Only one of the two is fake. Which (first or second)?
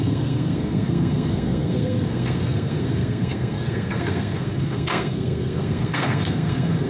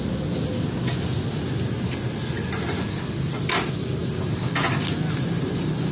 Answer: first